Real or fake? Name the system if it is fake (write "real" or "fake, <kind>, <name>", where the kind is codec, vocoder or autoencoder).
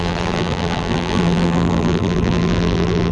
fake, vocoder, BigVGAN v2